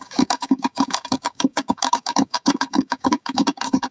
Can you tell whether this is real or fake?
fake